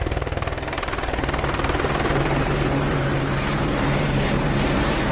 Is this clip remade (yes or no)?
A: yes